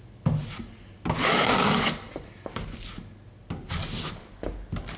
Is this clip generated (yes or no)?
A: no